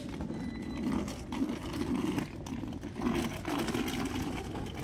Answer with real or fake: real